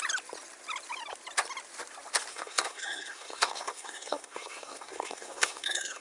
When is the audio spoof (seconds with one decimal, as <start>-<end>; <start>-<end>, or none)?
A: 2.3-6.0